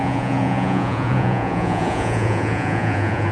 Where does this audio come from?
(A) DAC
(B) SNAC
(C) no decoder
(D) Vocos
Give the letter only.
D